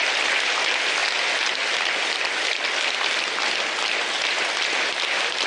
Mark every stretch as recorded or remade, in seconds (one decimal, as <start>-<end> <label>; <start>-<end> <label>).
0.0-5.5 recorded